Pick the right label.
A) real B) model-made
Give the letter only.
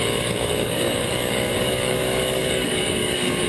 B